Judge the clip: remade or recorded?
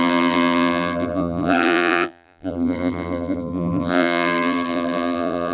remade